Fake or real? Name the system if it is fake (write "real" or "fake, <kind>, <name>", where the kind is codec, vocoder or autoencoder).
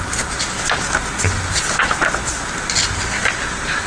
real